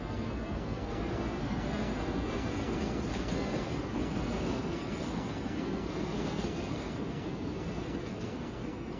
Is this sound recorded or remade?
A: remade